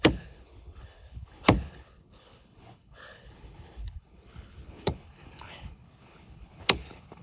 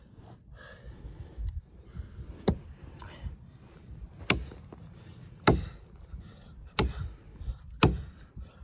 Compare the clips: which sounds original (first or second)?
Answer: second